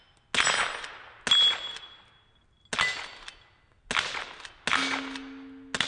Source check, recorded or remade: recorded